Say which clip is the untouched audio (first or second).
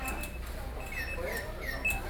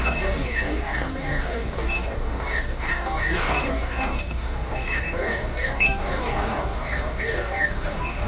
first